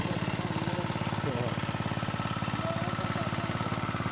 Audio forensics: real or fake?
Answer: real